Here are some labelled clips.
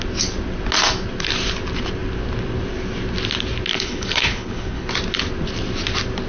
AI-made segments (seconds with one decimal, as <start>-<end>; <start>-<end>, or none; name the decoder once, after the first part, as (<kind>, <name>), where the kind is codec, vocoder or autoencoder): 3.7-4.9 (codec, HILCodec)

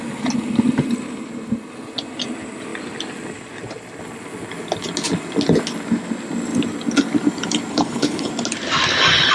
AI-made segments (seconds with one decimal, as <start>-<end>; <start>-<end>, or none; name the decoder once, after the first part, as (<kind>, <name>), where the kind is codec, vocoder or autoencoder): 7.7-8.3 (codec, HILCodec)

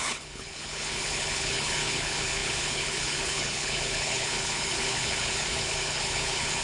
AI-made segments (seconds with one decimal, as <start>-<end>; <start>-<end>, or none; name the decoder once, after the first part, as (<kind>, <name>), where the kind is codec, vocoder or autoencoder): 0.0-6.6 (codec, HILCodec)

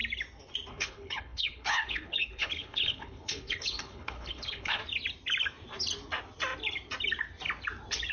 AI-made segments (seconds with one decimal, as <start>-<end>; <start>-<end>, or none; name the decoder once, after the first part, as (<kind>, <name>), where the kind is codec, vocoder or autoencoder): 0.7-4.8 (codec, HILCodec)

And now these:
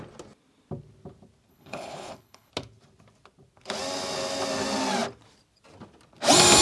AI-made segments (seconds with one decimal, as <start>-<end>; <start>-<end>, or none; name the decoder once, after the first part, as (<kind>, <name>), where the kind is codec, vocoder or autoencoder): 1.5-2.5 (codec, HILCodec)

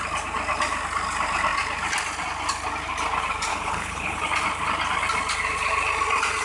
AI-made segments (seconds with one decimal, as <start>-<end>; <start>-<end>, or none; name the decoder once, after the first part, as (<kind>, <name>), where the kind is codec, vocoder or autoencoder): 3.5-4.2 (codec, HILCodec)

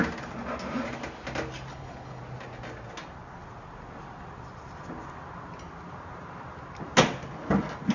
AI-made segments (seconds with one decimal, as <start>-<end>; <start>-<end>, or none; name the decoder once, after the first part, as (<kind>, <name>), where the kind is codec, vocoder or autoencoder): 1.7-2.2 (codec, HILCodec)